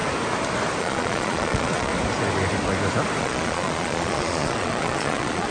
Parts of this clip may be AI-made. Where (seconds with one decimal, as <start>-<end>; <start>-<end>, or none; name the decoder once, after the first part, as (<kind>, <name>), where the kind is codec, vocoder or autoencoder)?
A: 0.8-1.9 (vocoder, Vocos); 3.2-5.5